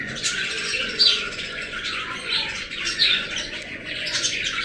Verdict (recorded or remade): remade